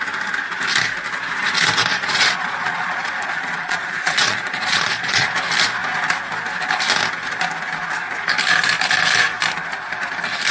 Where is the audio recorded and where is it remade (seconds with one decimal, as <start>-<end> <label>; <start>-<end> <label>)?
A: 0.0-1.9 recorded; 1.9-5.4 remade; 5.4-10.5 recorded